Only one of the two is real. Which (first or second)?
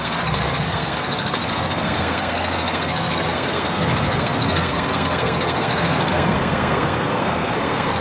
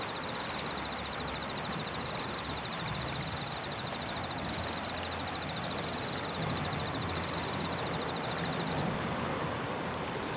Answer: second